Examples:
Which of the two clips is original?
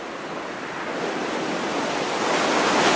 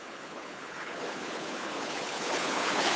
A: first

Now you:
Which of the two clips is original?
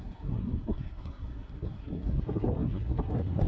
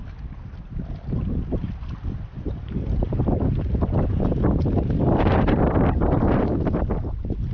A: second